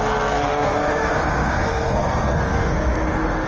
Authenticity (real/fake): fake